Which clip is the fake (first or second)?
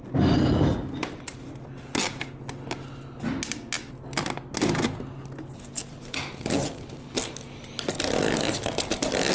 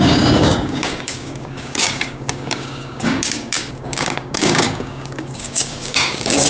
second